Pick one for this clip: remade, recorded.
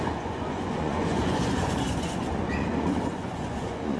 remade